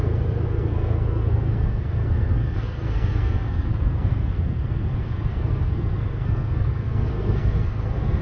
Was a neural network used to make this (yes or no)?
yes